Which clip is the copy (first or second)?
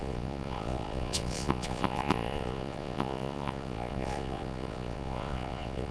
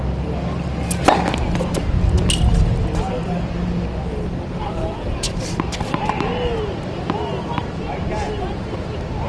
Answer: first